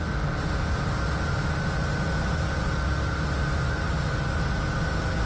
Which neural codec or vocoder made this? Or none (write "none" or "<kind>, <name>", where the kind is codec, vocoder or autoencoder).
none